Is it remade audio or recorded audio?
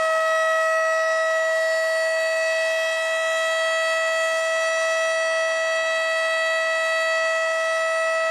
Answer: recorded